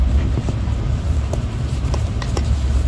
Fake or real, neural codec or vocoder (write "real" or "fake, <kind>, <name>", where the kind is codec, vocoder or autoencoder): fake, vocoder, BigVGAN v2